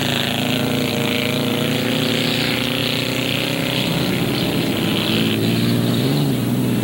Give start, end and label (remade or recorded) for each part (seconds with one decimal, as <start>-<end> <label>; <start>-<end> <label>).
0.0-6.8 recorded